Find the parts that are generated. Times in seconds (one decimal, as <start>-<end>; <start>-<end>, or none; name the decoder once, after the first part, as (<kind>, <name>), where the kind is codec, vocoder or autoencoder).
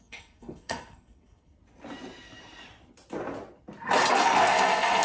0.0-1.5 (codec, SNAC); 4.1-5.0